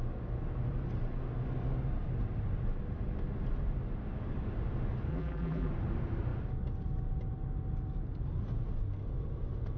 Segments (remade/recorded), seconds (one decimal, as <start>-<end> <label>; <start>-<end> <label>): 0.0-5.1 recorded; 5.1-5.7 remade; 5.7-9.8 recorded